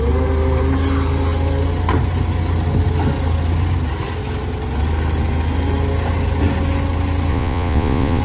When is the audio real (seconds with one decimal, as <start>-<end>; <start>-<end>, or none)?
0.0-7.3